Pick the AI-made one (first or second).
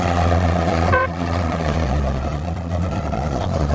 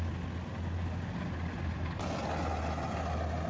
first